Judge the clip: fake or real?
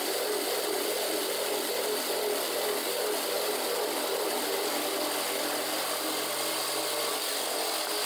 real